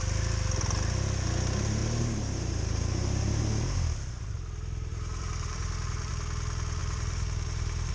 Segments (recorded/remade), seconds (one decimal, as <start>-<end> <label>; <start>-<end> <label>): 0.0-1.8 recorded; 1.8-3.4 remade; 3.4-4.9 recorded; 4.9-6.1 remade; 6.1-6.8 recorded; 6.8-7.9 remade